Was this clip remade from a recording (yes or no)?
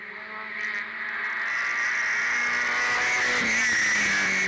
no